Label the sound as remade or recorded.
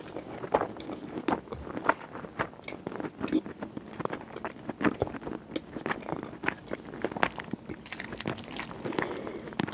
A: recorded